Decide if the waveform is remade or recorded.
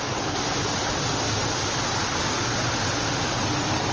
recorded